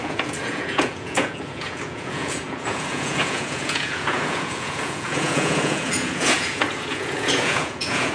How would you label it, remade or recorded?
remade